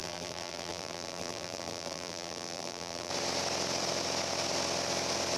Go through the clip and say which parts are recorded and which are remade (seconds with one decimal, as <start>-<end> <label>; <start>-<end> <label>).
0.0-3.1 remade; 3.1-5.4 recorded